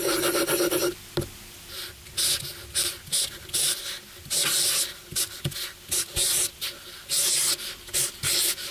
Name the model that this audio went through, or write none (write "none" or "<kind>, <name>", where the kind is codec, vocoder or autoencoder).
none